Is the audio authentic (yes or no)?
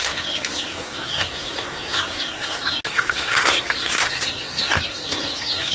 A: no